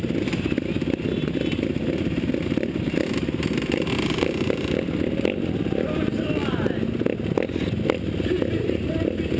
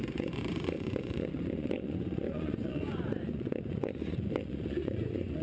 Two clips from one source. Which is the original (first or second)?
first